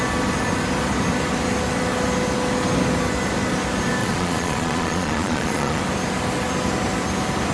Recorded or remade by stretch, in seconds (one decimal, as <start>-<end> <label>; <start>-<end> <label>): 0.0-4.0 recorded; 4.0-5.8 remade; 5.8-7.5 recorded